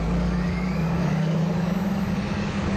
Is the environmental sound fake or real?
fake